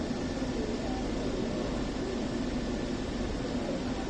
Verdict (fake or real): real